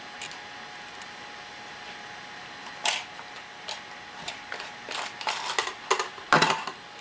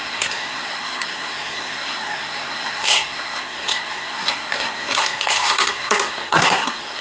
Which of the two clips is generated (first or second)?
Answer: second